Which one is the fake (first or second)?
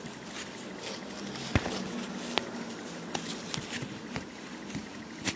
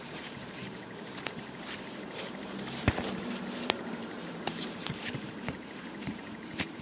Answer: second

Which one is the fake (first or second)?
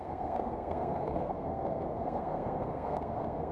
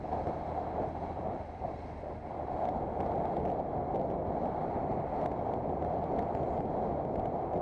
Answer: first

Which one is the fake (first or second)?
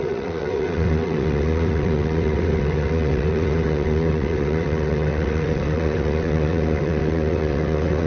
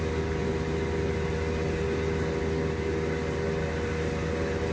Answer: first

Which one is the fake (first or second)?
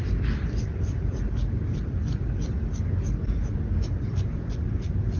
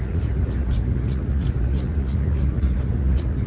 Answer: second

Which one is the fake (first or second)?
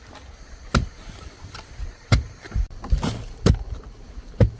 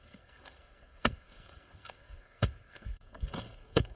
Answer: second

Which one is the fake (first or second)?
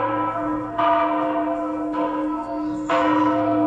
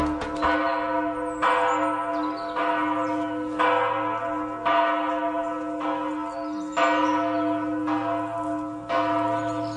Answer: first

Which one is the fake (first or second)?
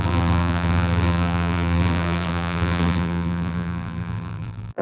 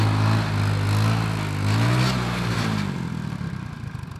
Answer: first